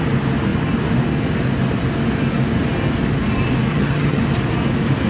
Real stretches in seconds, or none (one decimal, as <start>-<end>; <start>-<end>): 0.0-3.7; 4.2-5.1